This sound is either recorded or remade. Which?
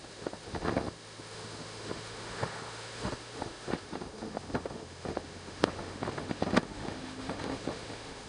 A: remade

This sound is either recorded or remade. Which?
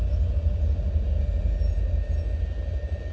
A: recorded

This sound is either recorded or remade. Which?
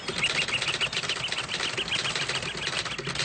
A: recorded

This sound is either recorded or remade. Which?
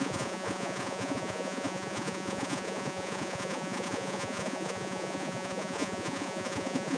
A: remade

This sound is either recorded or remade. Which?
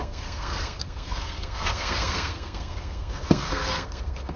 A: remade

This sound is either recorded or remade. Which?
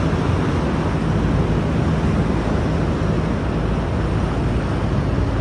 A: recorded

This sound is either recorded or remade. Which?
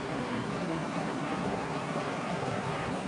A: remade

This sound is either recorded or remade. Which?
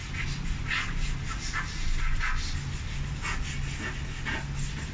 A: recorded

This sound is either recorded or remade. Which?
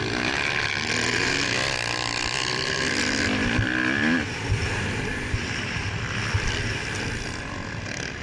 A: recorded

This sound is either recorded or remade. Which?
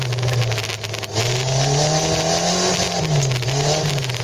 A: recorded